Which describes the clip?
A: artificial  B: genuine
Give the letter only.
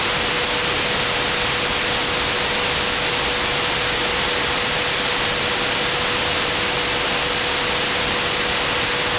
B